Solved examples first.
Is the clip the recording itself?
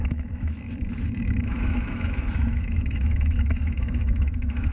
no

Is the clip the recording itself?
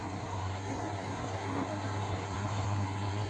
no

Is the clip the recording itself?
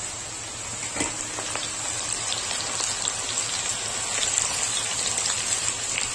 yes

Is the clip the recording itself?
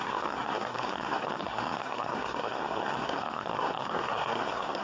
no